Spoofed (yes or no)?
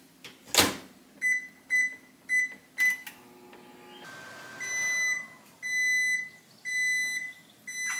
no